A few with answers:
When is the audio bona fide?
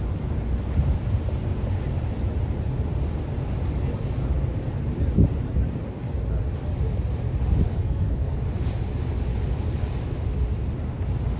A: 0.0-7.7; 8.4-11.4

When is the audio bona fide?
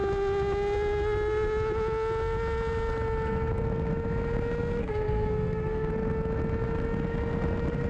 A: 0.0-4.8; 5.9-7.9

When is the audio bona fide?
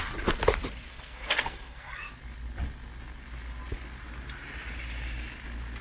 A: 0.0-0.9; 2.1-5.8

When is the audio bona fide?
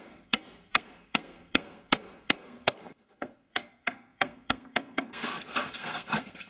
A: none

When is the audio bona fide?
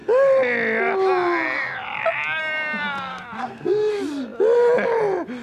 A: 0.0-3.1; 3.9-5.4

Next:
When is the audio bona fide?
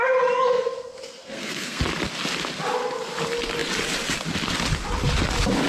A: 0.0-0.5; 1.8-5.7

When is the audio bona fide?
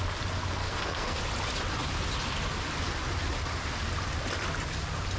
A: 0.0-0.6; 1.2-5.2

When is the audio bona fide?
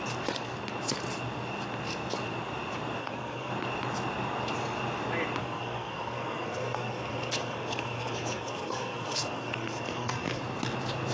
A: 0.0-3.0; 3.5-5.4; 10.4-11.1